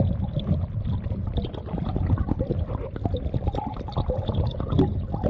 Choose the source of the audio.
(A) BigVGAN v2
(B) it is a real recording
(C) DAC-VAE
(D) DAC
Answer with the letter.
B